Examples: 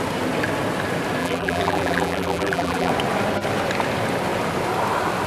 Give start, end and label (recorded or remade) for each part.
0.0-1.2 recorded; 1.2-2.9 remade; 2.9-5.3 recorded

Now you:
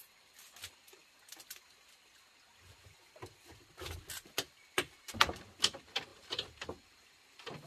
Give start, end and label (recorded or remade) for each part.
0.0-6.1 recorded; 6.1-7.7 remade